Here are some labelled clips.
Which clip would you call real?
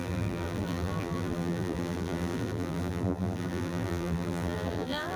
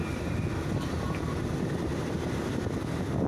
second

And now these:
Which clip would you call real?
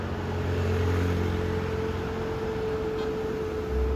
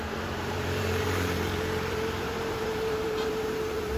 first